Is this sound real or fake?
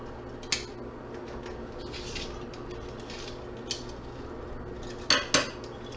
real